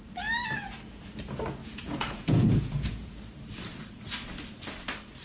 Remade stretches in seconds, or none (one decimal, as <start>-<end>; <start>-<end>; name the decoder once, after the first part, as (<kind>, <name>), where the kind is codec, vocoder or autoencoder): 1.6-3.2 (vocoder, Vocos)